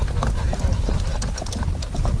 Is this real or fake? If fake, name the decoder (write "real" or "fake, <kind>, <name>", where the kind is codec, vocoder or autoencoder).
real